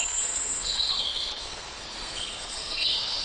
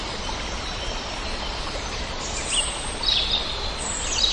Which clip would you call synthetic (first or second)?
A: first